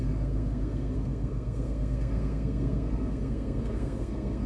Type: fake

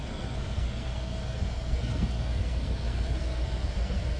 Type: fake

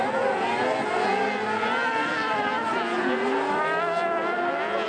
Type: real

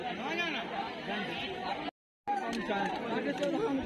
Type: real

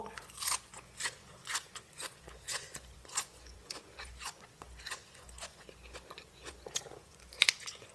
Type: fake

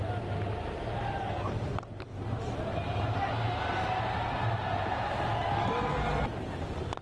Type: real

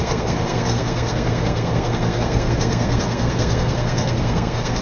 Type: fake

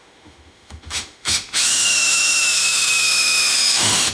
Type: fake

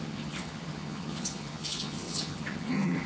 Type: fake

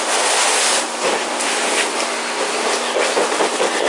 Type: real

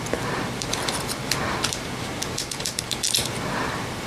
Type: fake